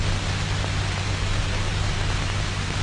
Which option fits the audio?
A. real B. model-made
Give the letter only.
A